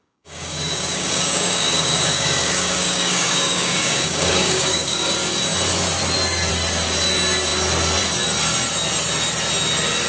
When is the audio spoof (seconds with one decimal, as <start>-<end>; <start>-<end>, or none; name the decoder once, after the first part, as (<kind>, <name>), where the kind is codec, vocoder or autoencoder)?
0.0-5.1 (codec, DAC)